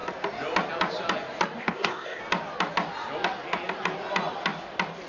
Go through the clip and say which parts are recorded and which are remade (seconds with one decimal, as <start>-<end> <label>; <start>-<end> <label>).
0.0-1.6 recorded; 1.6-2.2 remade; 2.2-5.1 recorded